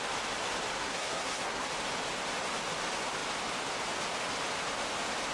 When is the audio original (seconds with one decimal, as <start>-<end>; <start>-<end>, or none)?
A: 0.0-0.8; 1.7-5.3